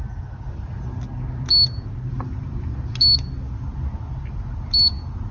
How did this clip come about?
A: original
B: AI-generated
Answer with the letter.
A